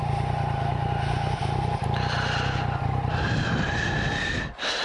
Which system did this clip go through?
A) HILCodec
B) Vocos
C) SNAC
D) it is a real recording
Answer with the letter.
D